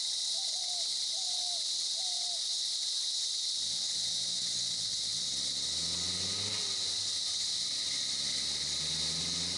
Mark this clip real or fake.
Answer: real